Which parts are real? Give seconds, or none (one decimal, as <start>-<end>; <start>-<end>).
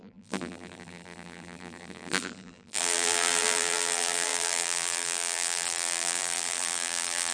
none